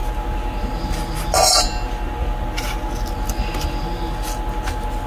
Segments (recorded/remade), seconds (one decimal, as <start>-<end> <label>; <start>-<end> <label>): 0.0-5.1 recorded